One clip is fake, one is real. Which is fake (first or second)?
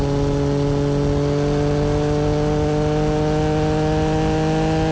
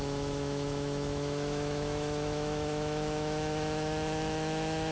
second